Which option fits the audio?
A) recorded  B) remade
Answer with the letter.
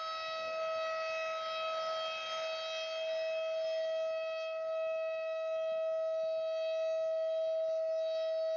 A